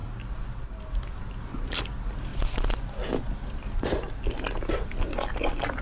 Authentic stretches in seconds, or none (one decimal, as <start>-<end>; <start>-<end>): 0.0-2.3; 5.0-5.8